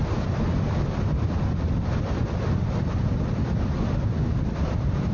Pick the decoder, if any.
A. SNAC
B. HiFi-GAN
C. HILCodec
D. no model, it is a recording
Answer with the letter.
D